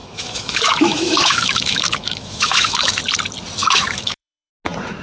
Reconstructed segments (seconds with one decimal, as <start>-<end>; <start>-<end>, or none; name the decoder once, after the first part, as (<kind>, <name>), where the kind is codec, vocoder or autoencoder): 0.0-3.0 (autoencoder, DAC-VAE); 3.6-4.5